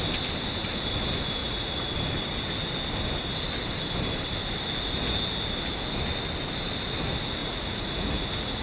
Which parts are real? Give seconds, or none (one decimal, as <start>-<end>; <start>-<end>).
0.0-1.4; 1.9-7.4